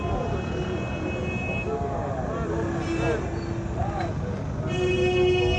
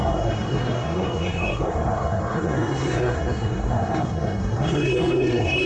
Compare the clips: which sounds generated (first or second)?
second